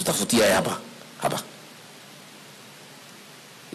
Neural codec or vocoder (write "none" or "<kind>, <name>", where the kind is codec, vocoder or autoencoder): none